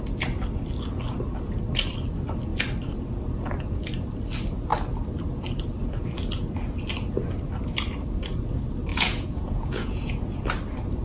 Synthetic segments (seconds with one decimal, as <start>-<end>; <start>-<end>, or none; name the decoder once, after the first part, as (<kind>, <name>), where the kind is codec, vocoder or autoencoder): 8.9-10.4 (vocoder, Vocos)